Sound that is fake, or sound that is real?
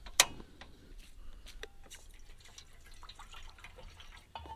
real